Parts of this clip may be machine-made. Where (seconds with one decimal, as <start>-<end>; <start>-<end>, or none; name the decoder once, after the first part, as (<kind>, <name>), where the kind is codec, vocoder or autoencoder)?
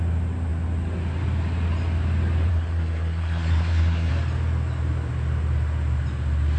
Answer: 2.5-4.1 (codec, SNAC)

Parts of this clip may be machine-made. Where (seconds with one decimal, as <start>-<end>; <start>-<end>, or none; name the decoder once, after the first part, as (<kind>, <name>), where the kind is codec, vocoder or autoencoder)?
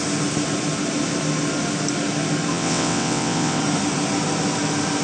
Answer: 2.5-3.6 (vocoder, WaveNeXt)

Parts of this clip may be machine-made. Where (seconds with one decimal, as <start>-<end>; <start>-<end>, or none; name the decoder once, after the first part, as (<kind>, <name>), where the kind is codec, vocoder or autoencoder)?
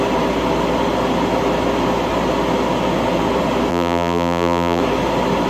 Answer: 3.7-4.8 (vocoder, BigVGAN v2)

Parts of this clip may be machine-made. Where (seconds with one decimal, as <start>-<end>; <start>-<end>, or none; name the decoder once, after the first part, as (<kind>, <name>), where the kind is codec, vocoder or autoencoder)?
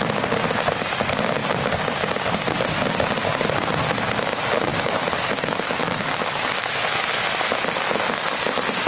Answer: 4.7-7.1 (autoencoder, DAC-VAE)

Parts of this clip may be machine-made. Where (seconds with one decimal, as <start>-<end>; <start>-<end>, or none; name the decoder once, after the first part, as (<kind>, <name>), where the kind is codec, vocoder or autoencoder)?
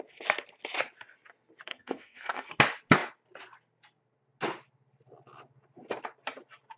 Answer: 1.7-2.5 (codec, SNAC)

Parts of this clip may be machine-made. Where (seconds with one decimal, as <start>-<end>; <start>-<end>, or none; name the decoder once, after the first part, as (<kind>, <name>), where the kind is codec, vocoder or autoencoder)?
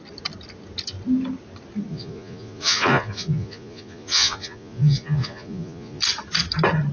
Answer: 1.9-6.0 (vocoder, Vocos)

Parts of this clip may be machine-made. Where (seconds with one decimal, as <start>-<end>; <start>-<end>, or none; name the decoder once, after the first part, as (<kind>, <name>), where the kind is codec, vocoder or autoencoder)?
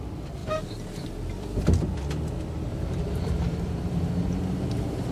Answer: 0.4-1.1 (vocoder, BigVGAN v2); 2.7-4.4